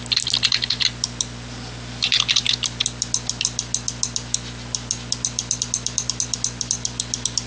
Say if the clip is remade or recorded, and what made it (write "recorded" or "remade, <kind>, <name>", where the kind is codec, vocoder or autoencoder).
recorded